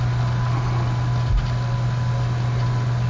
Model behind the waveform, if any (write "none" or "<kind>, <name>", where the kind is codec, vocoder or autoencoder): none